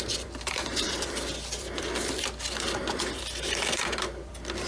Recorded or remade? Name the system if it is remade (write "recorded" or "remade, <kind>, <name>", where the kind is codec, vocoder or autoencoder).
remade, vocoder, BigVGAN v2